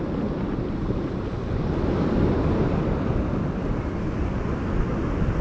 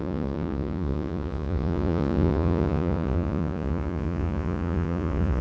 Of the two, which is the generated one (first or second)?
second